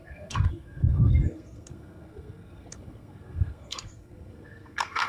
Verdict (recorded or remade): remade